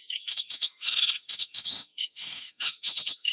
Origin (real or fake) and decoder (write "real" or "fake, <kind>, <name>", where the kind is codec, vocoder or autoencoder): fake, autoencoder, DAC-VAE